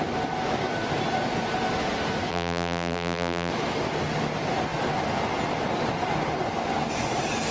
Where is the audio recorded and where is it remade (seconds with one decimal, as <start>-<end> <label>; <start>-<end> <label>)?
0.0-2.3 recorded; 2.3-3.5 remade; 3.5-7.5 recorded